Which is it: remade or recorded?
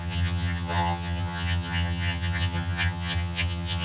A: remade